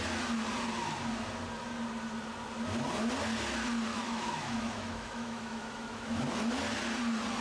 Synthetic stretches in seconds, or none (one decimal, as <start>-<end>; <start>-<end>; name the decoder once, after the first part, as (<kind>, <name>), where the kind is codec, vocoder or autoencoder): 3.9-6.2 (autoencoder, DAC-VAE)